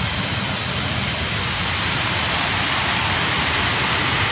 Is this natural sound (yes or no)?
yes